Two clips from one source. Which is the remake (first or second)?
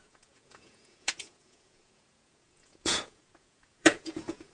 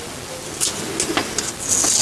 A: first